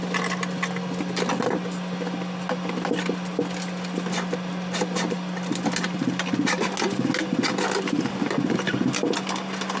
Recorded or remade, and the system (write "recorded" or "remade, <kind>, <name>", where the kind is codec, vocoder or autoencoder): recorded